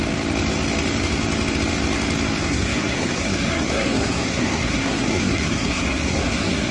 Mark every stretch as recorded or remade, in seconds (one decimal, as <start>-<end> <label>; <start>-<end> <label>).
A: 0.0-2.4 recorded; 2.4-6.7 remade